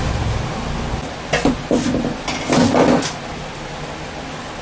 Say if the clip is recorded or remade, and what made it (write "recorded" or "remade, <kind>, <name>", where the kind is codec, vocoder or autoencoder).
recorded